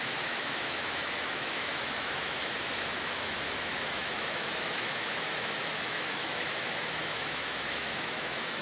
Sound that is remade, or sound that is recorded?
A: remade